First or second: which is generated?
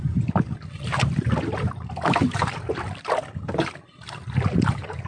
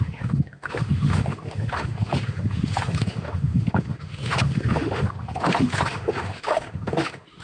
second